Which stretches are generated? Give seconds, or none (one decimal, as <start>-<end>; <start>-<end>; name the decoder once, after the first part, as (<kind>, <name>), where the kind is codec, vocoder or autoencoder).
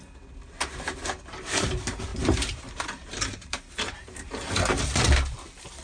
2.1-4.5 (vocoder, BigVGAN v2)